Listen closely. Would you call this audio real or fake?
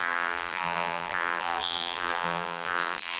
fake